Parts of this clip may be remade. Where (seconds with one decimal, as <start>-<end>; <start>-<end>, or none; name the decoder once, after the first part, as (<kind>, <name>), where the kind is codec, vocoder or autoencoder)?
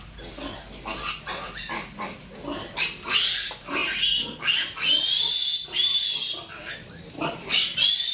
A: none